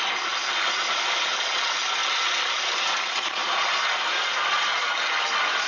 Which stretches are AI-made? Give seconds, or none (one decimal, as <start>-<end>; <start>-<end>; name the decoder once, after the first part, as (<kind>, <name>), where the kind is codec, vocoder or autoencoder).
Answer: none